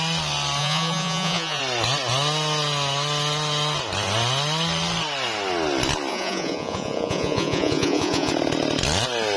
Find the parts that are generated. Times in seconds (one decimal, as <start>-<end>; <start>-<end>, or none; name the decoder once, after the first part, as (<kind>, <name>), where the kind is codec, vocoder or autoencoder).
0.6-1.6 (vocoder, Vocos); 6.1-8.3